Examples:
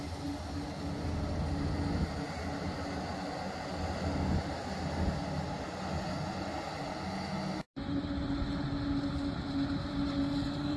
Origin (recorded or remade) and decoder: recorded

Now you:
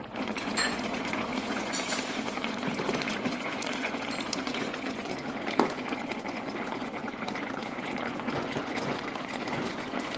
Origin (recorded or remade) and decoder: remade, vocoder, Vocos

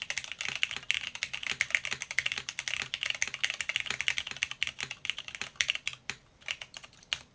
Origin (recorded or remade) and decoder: recorded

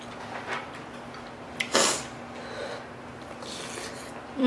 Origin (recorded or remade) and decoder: recorded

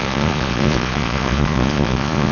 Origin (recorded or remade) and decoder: remade, vocoder, Vocos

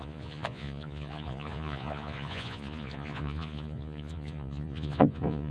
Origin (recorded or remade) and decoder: remade, vocoder, Vocos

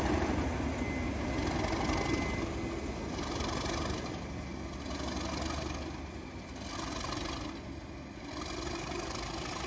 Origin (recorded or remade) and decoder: recorded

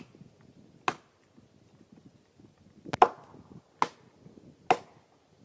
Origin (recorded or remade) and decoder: recorded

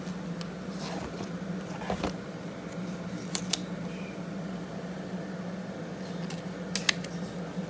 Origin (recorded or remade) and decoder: recorded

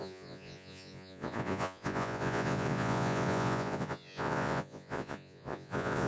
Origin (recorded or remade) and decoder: remade, vocoder, Vocos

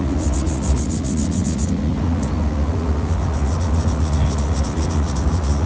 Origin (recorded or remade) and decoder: remade, vocoder, Vocos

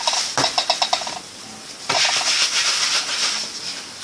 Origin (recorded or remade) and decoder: recorded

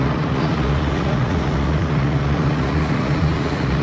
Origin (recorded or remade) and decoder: remade, vocoder, Vocos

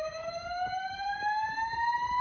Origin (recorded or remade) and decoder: recorded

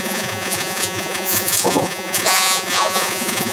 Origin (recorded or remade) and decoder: remade, vocoder, Vocos